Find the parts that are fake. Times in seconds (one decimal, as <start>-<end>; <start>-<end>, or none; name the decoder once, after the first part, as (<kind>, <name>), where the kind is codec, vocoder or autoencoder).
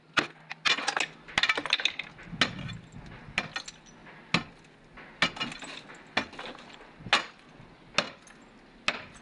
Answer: none